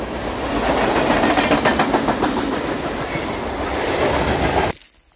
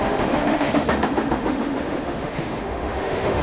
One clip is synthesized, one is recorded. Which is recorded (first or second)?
first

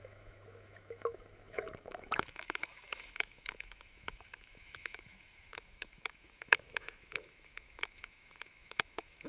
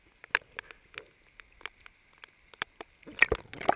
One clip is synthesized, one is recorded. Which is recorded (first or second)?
second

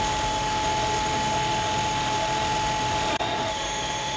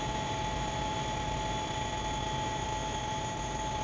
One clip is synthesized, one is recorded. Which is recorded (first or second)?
second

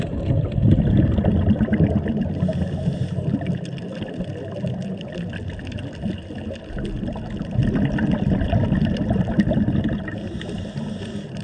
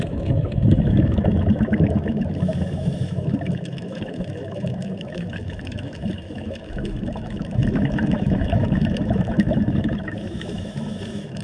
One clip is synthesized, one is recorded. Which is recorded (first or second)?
first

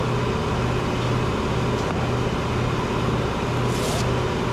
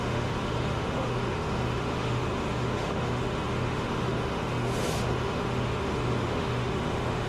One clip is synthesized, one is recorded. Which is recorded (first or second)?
first